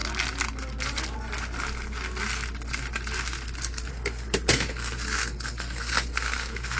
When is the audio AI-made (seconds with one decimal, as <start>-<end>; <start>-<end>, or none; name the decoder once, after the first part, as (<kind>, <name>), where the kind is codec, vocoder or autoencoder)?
3.9-6.8 (codec, SNAC)